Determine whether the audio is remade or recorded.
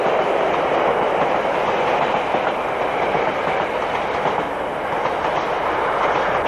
recorded